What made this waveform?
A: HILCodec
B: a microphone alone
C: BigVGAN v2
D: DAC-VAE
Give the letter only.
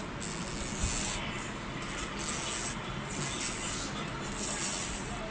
B